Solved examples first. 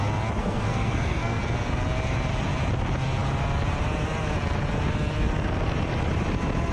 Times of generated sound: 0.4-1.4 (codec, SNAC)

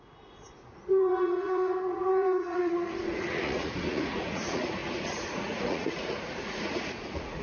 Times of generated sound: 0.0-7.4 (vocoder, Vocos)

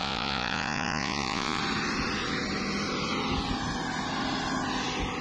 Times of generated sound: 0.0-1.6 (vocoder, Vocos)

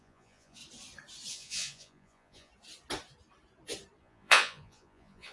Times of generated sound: 0.0-0.6 (vocoder, Vocos); 1.3-2.5; 4.0-5.3

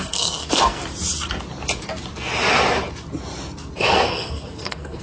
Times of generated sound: 0.0-0.8 (codec, SNAC); 3.8-5.0

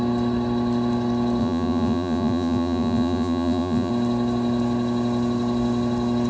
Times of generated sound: 1.4-3.9 (vocoder, Vocos)

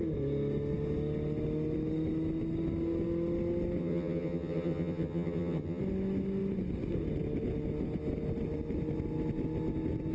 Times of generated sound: 3.8-5.8 (vocoder, HiFi-GAN)